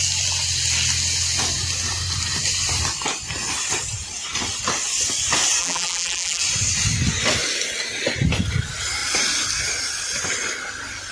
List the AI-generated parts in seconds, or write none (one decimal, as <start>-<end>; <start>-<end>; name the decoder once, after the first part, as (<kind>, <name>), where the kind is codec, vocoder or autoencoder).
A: 5.6-6.4 (vocoder, BigVGAN v2)